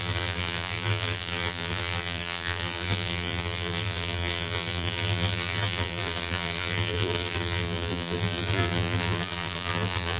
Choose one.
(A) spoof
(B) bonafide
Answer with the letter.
A